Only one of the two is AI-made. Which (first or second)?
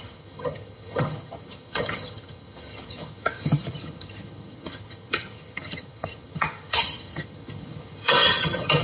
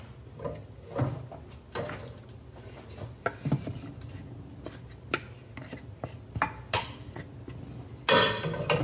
first